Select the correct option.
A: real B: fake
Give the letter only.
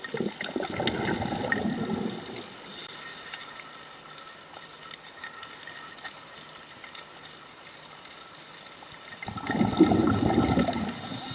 A